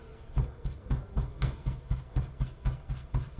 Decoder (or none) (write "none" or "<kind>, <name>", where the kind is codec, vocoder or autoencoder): codec, SNAC